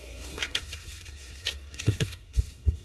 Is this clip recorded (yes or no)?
no